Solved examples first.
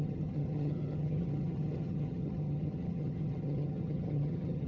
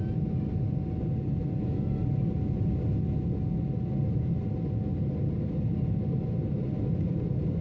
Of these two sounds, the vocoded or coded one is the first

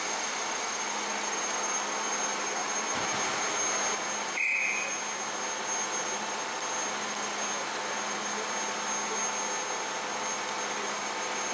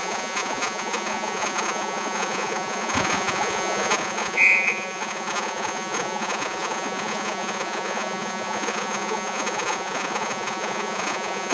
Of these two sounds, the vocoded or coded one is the second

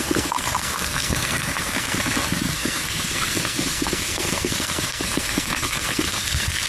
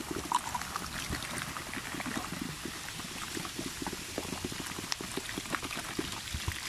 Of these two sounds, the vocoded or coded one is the first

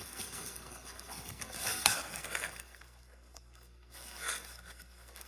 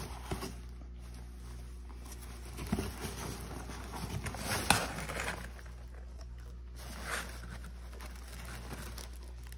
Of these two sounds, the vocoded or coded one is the first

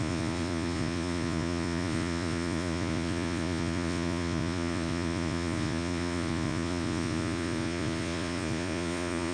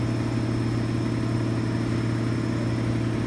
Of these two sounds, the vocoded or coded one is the first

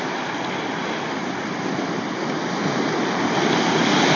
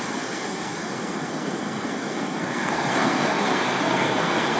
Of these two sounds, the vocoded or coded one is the second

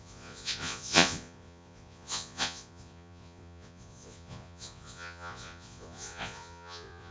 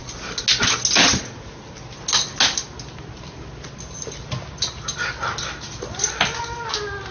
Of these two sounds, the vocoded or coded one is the first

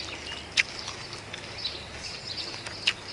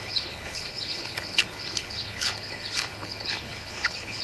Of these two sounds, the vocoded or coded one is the second